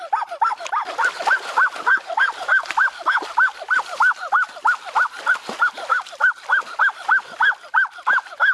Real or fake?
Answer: real